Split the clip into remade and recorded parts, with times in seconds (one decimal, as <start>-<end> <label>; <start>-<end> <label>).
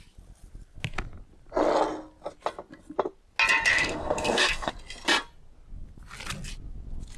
0.0-3.7 recorded; 3.7-4.7 remade; 4.7-7.2 recorded